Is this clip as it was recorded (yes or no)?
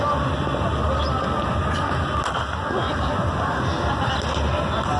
yes